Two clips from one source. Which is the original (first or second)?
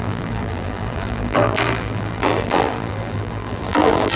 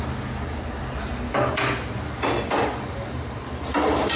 second